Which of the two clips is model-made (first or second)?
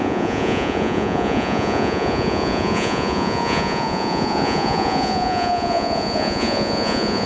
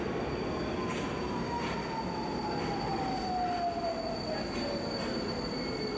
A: first